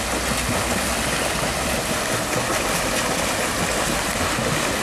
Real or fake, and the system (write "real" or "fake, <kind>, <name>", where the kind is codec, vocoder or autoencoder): real